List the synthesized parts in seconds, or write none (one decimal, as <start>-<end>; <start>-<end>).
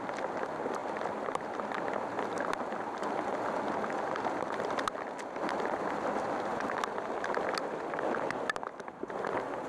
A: none